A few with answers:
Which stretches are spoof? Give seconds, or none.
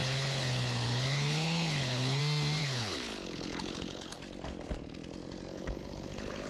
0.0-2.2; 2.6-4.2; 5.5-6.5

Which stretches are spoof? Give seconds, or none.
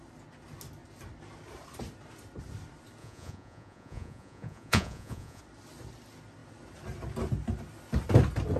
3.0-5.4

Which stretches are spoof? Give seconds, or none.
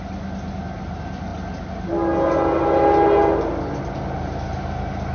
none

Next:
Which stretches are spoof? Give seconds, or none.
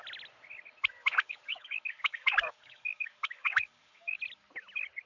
1.1-4.2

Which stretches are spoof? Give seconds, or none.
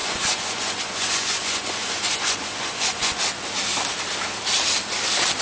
0.0-3.2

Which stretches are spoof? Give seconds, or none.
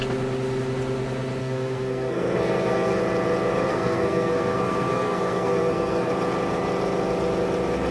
1.4-3.0; 3.7-6.1